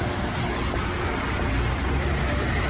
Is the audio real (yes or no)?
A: yes